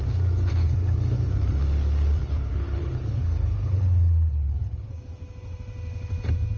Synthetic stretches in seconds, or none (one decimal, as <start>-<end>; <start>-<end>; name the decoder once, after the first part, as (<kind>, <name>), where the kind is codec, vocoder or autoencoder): 0.6-1.3 (codec, HILCodec); 2.2-4.9